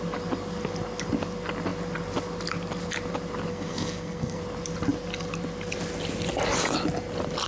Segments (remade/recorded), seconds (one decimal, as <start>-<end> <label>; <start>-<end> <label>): 0.0-3.5 recorded; 3.5-4.4 remade; 4.4-7.5 recorded